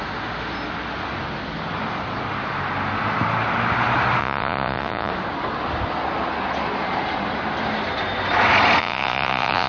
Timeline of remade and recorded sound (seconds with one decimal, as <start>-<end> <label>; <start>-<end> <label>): 0.0-4.2 recorded; 4.2-5.1 remade; 5.1-8.8 recorded; 8.8-9.7 remade